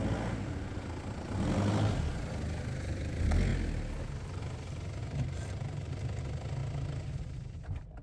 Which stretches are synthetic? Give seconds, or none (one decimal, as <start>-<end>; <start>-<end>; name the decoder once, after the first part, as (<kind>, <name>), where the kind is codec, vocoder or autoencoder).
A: 5.0-5.9 (vocoder, BigVGAN v2)